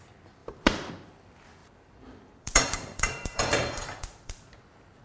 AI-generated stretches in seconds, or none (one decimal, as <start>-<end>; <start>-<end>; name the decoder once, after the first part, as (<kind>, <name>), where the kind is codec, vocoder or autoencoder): 0.4-0.9 (vocoder, BigVGAN v2); 1.6-4.6